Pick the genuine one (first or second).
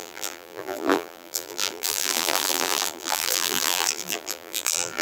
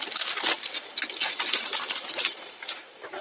second